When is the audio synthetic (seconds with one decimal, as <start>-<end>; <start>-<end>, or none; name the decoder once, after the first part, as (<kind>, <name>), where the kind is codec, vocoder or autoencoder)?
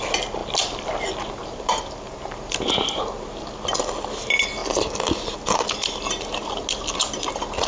none